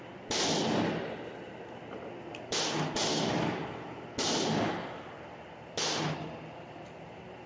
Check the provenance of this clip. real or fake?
real